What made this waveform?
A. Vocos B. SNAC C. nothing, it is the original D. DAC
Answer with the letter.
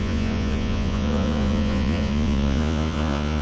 A